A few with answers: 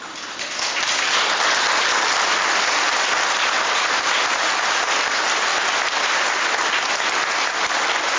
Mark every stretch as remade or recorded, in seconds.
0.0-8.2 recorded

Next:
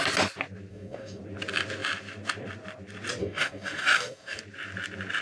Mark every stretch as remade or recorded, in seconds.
0.0-0.7 recorded; 0.7-1.2 remade; 1.2-3.2 recorded; 3.2-4.4 remade; 4.4-5.2 recorded

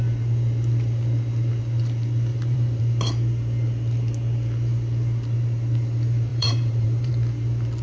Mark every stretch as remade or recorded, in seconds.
0.0-2.3 recorded; 2.3-2.8 remade; 2.8-6.3 recorded; 6.3-7.1 remade; 7.1-7.8 recorded